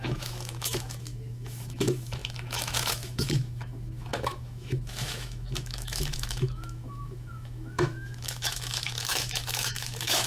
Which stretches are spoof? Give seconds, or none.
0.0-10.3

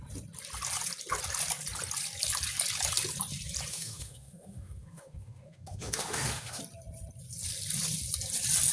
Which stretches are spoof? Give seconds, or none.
3.7-6.6

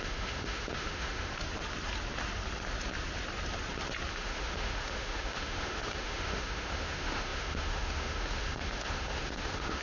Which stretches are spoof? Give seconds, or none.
0.0-1.3; 4.1-9.8

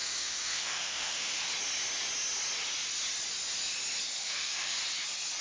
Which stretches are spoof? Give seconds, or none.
0.0-1.5; 4.2-4.8

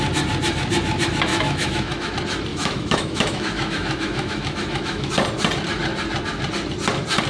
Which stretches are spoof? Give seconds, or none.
1.3-2.1; 2.5-5.1

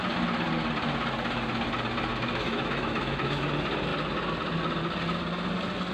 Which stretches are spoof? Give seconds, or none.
2.1-3.5

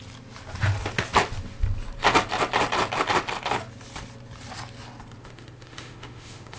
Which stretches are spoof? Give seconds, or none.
5.2-6.6

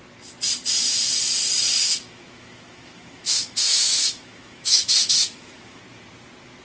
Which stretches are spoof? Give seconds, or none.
1.8-5.8